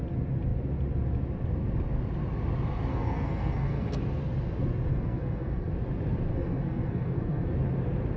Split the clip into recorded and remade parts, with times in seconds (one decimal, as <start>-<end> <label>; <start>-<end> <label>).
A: 0.0-2.9 recorded; 2.9-4.0 remade; 4.0-4.9 recorded; 4.9-5.7 remade; 5.7-6.3 recorded; 6.3-7.5 remade; 7.5-8.2 recorded